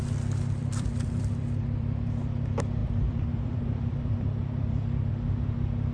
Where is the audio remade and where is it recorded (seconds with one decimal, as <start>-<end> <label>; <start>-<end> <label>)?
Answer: 0.0-0.6 recorded; 0.6-2.1 remade; 2.1-2.8 recorded; 2.8-5.1 remade; 5.1-5.9 recorded